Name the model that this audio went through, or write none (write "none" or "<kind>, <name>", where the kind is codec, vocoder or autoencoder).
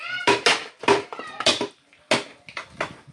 none